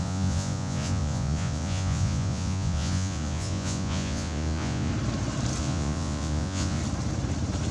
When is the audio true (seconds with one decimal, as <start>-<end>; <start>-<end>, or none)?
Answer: 4.9-5.6; 6.8-7.7